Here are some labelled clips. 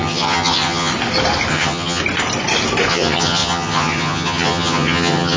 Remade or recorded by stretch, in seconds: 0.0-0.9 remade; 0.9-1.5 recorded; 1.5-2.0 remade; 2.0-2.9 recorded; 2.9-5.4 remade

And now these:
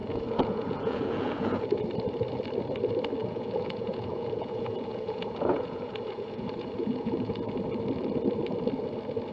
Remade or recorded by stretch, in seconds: 0.0-1.7 remade; 1.7-3.2 recorded; 3.2-7.3 remade; 7.3-9.3 recorded

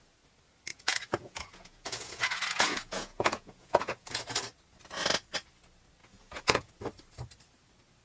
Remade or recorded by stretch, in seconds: 0.0-0.7 recorded; 0.7-4.2 remade; 4.2-6.0 recorded; 6.0-6.7 remade; 6.7-8.0 recorded

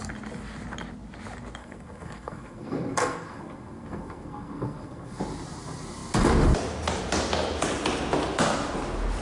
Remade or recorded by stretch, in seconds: 0.0-1.6 recorded; 1.6-5.2 remade; 5.2-9.2 recorded

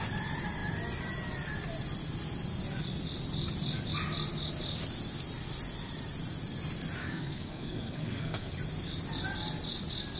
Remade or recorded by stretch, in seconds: 0.0-7.0 recorded; 7.0-8.5 remade; 8.5-10.2 recorded

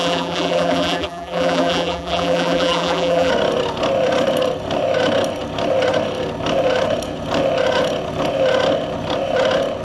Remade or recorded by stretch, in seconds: 0.0-3.3 remade; 3.3-9.8 recorded

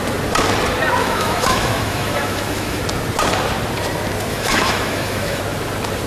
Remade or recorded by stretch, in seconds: 0.0-1.0 recorded; 1.0-2.8 remade; 2.8-4.3 recorded; 4.3-5.4 remade; 5.4-6.1 recorded

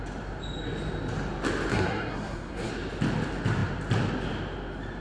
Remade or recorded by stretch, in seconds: 0.0-1.7 recorded; 1.7-2.7 remade; 2.7-5.0 recorded